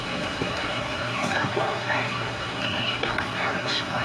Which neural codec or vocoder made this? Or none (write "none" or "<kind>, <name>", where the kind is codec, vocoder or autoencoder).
codec, SNAC